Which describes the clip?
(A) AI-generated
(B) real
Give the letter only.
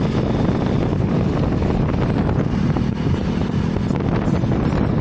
B